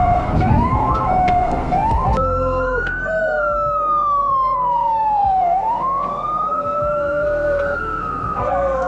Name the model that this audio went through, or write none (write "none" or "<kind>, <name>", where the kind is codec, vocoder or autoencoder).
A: codec, SNAC